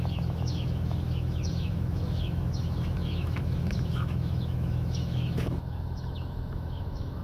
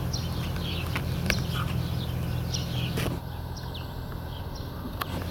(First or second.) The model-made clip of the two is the first